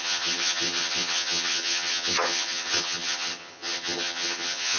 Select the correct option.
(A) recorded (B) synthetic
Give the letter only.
B